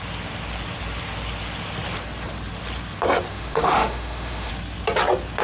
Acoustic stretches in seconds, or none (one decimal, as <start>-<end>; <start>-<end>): 0.0-3.3; 4.5-5.4